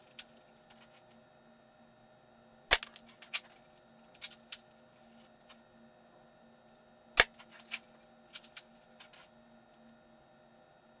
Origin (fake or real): real